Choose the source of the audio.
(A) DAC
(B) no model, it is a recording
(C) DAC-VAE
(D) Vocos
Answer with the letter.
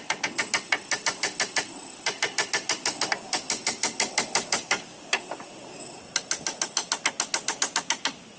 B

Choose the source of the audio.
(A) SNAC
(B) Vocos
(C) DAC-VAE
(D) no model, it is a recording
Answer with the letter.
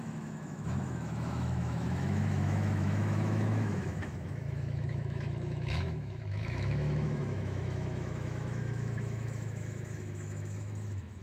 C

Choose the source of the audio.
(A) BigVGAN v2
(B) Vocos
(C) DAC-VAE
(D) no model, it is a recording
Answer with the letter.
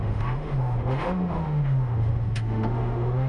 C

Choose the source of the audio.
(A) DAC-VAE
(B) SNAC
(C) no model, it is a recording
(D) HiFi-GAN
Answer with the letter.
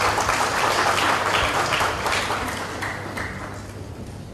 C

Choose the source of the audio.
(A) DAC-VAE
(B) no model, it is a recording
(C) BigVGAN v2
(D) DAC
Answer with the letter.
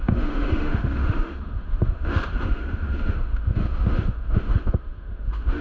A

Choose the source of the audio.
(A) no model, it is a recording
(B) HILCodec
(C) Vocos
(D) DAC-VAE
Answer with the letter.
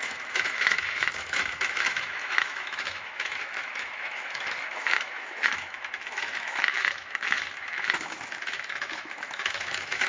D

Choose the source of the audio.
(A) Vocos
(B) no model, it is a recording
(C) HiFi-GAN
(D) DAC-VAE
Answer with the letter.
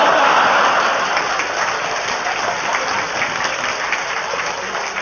B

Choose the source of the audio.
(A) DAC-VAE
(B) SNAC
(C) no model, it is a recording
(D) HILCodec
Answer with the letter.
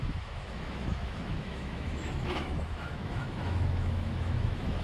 A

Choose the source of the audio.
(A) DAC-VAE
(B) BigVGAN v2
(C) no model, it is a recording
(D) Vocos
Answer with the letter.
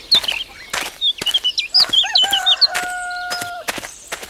C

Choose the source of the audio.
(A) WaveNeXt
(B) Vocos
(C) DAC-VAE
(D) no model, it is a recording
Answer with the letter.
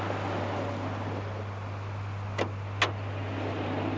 D